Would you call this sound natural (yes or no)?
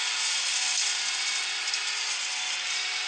yes